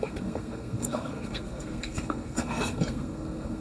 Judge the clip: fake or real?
fake